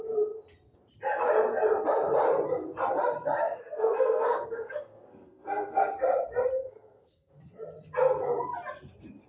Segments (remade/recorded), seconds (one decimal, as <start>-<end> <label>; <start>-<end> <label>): 0.0-3.4 recorded; 3.4-5.9 remade; 5.9-6.6 recorded; 6.6-7.3 remade; 7.3-9.3 recorded